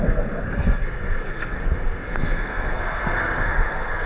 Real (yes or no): no